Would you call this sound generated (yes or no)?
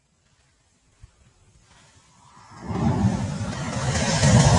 no